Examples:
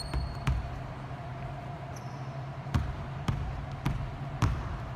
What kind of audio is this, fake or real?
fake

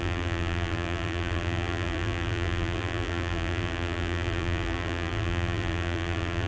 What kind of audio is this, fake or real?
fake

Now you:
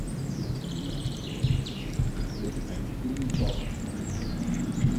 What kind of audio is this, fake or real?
fake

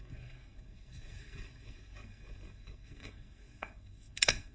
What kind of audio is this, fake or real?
fake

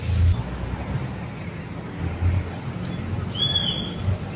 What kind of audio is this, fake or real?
real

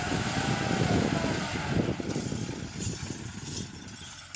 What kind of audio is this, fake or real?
real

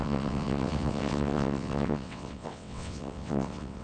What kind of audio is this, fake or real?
fake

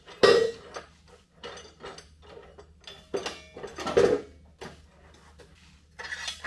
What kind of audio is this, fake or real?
real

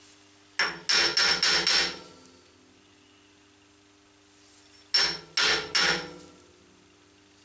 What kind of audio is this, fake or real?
real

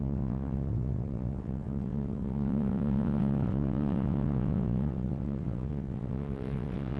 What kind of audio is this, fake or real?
fake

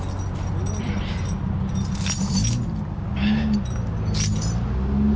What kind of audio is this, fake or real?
real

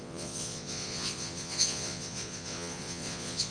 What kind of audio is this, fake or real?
fake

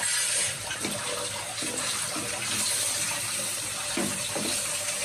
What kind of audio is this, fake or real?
fake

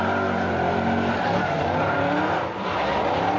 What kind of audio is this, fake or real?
real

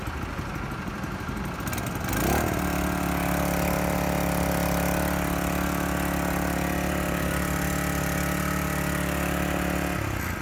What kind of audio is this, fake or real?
real